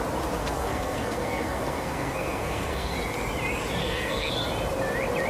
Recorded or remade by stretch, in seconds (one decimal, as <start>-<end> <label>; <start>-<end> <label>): 0.0-0.4 recorded; 0.4-2.9 remade; 2.9-3.8 recorded; 3.8-4.3 remade; 4.3-5.3 recorded